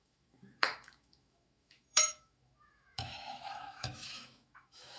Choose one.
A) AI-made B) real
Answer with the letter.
A